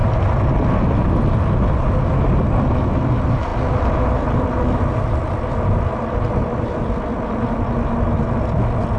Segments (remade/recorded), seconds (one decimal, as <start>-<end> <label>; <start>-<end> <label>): 0.0-9.0 recorded